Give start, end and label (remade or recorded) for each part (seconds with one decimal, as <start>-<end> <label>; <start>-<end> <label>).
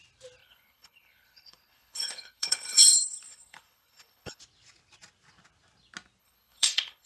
0.0-0.4 recorded; 0.4-4.4 remade; 4.4-6.2 recorded; 6.2-7.1 remade